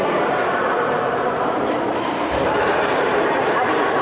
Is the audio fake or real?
fake